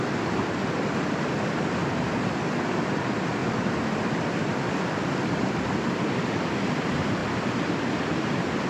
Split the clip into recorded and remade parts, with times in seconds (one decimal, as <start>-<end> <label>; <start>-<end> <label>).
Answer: 0.0-3.4 recorded; 3.4-6.2 remade; 6.2-8.7 recorded